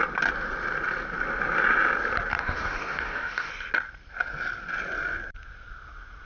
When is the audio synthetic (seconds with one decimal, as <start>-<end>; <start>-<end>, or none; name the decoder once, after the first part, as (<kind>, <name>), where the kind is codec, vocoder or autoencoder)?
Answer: 2.4-3.5 (codec, DAC)